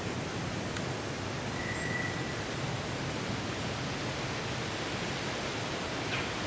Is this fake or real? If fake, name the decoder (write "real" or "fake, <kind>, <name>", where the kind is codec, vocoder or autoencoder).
real